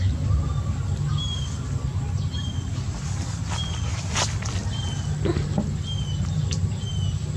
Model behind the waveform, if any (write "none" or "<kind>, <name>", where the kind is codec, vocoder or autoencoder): none